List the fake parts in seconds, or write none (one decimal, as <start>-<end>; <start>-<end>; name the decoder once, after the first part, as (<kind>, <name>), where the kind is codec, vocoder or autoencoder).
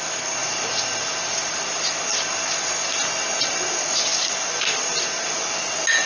none